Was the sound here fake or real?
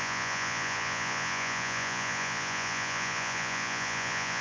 fake